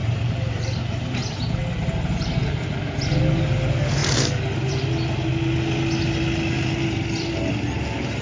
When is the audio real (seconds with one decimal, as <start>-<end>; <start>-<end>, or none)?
1.2-8.2